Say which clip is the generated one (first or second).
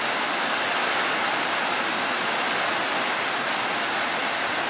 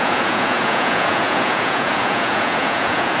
second